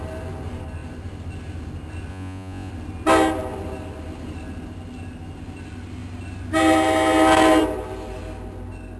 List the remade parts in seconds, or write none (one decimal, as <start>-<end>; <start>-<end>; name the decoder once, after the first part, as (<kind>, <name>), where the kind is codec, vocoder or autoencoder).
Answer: 2.1-2.7 (vocoder, Vocos)

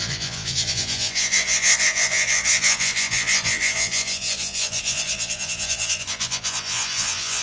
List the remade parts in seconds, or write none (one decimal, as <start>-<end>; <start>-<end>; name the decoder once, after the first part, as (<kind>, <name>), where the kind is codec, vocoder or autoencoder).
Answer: 0.0-7.4 (vocoder, Vocos)

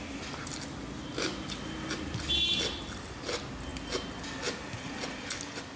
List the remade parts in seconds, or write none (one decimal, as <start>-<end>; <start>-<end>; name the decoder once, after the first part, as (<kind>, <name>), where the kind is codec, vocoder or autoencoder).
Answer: none

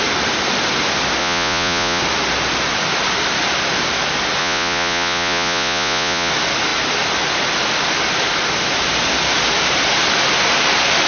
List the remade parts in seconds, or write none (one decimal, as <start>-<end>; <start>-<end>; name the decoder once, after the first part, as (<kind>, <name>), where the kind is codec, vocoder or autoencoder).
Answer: 1.2-2.0 (vocoder, Vocos); 4.4-6.3